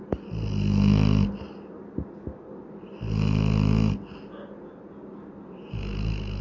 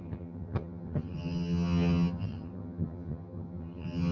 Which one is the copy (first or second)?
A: second